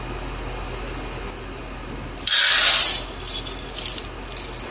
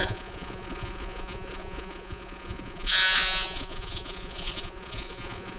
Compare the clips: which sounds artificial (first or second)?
second